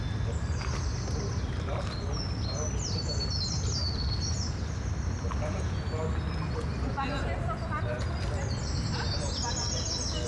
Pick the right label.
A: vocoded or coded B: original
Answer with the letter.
B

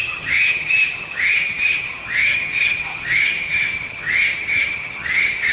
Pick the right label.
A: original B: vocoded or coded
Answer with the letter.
B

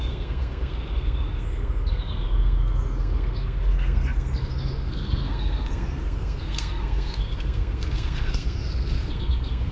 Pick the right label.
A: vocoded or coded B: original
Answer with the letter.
A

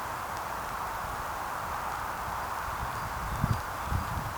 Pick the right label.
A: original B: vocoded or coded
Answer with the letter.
B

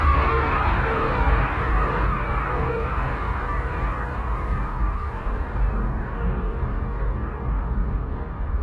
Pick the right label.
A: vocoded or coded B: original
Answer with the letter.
A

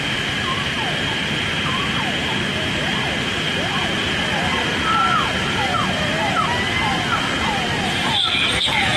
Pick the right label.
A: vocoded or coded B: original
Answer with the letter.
A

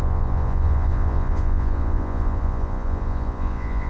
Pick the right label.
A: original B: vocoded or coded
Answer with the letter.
B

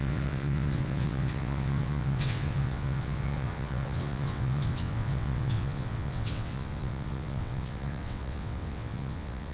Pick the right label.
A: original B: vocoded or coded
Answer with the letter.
B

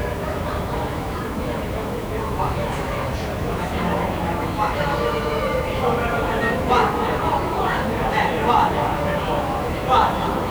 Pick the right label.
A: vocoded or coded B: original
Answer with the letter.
A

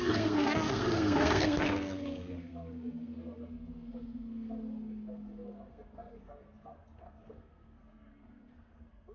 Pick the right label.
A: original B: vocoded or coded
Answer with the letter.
B